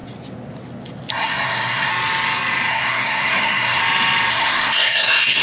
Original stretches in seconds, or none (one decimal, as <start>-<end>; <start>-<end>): 0.0-1.1; 1.9-2.7; 3.8-4.3